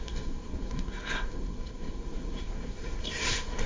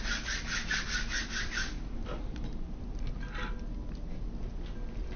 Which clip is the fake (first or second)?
first